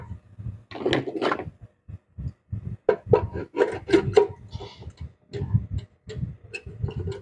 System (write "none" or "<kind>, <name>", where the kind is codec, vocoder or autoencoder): none